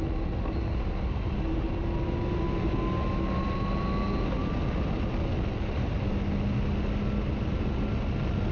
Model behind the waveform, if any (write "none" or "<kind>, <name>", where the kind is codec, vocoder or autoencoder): none